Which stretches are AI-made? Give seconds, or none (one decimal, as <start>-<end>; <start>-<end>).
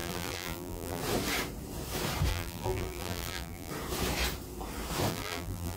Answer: 0.0-1.0; 2.3-3.7; 5.1-5.8